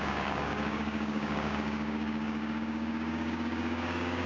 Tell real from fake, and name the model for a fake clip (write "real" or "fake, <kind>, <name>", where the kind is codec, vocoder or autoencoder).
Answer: fake, codec, DAC